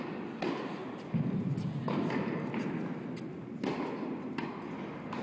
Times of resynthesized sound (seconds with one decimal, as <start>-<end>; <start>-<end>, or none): none